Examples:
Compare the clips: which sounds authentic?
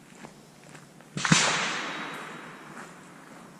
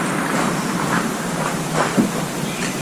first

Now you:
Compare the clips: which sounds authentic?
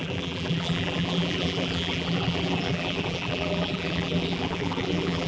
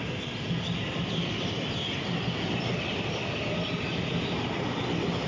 second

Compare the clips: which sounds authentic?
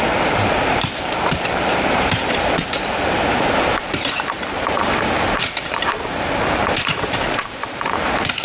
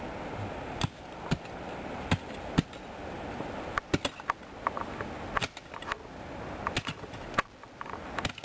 second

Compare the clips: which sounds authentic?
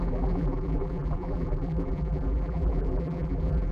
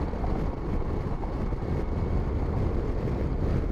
second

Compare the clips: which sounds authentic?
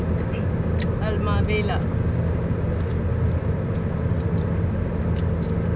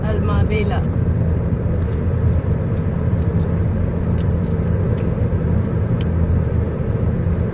first